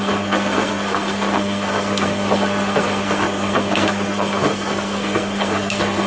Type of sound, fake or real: fake